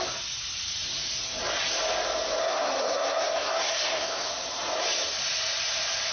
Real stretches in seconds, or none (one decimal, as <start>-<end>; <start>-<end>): 0.0-2.4; 4.3-6.1